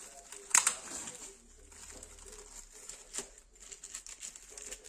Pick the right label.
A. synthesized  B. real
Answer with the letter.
B